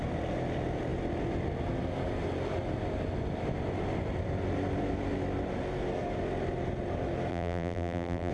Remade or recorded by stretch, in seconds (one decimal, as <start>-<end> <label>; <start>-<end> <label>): 0.0-7.3 recorded; 7.3-8.3 remade